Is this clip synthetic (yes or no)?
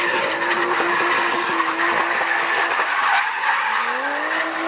no